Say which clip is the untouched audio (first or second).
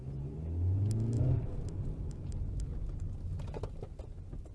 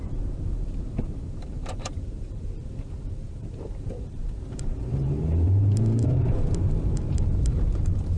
first